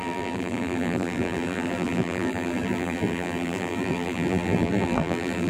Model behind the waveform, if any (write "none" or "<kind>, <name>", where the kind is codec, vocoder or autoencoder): vocoder, BigVGAN v2